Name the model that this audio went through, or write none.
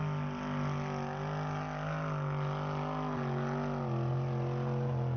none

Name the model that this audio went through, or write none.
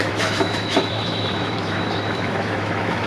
autoencoder, DAC-VAE